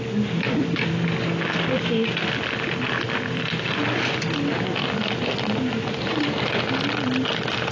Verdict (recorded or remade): recorded